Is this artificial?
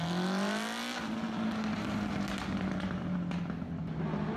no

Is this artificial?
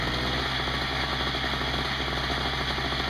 no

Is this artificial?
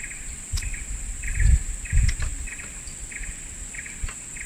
no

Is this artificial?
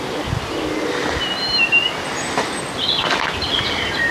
no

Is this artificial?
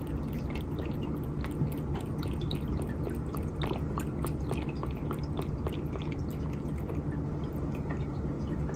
no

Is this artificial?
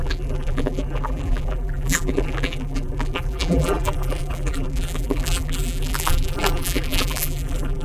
yes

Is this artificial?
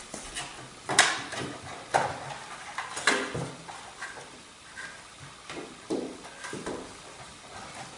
no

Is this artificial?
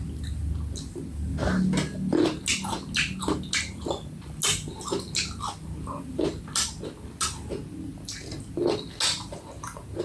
no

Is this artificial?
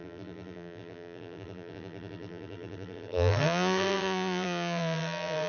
yes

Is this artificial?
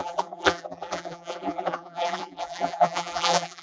yes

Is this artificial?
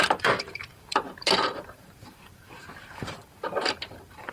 yes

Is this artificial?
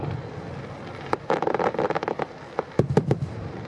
yes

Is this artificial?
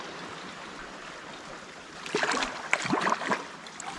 yes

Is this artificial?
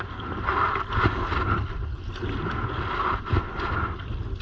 no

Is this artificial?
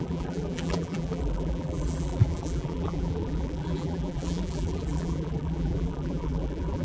yes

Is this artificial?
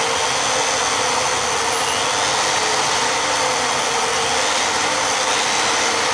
no